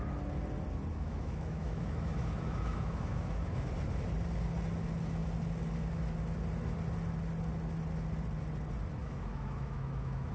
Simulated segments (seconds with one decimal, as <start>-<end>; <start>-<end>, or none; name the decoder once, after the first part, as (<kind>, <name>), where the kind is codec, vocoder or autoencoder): 0.9-3.7 (autoencoder, DAC-VAE); 9.0-10.3

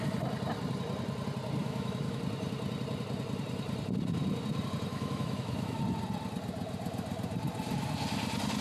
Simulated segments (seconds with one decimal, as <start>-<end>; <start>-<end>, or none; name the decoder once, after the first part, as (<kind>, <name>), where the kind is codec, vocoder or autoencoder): 1.6-2.2 (autoencoder, DAC-VAE); 4.9-5.8